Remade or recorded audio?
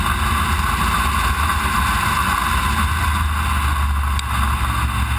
recorded